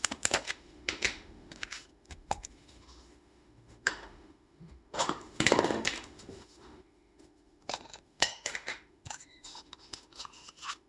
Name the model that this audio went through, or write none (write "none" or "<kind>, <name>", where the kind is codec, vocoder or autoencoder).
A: autoencoder, DAC-VAE